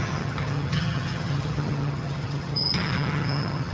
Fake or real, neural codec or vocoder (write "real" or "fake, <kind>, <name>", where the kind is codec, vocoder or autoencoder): fake, vocoder, HiFi-GAN